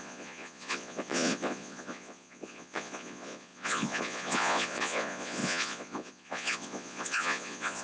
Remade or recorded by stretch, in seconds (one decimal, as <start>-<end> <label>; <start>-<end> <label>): 0.0-7.8 remade